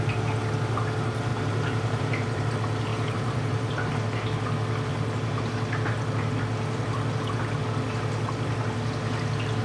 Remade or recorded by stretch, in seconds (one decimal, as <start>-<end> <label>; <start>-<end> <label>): 0.0-1.3 recorded; 1.3-2.5 remade; 2.5-2.9 recorded; 2.9-3.9 remade; 3.9-9.6 recorded